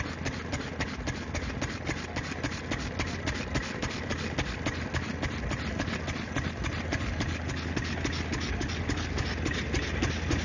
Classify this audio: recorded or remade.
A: recorded